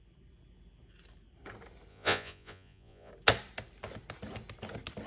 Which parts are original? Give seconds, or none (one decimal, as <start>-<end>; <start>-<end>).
0.0-1.9; 3.1-5.1